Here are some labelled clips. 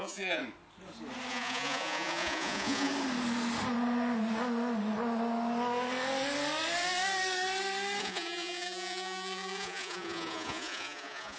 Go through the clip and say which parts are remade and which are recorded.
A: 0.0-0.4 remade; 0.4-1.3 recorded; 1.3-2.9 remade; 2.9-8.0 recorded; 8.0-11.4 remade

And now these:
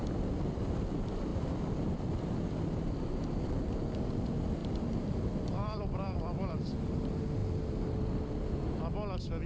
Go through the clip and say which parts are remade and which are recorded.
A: 0.0-1.3 recorded; 1.3-2.7 remade; 2.7-4.6 recorded; 4.6-6.5 remade; 6.5-9.5 recorded